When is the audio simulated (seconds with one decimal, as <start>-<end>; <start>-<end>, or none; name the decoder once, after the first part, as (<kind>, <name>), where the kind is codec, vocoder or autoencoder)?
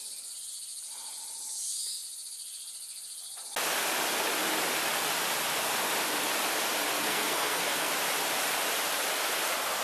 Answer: 6.9-7.9 (codec, SNAC)